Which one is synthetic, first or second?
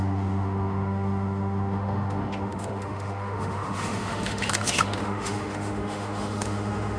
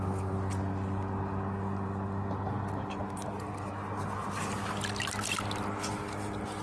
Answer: first